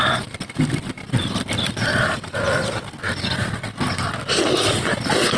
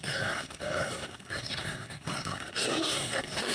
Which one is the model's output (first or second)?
second